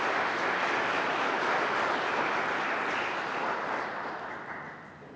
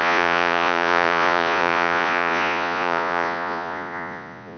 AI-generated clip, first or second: second